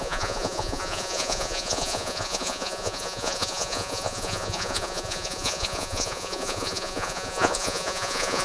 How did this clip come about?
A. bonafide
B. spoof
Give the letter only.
B